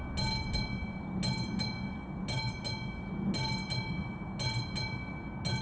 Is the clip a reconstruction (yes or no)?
no